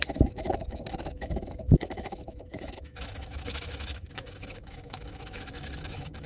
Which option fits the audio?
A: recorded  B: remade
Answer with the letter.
B